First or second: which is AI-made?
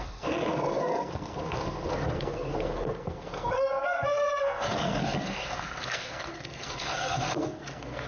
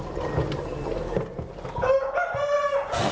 first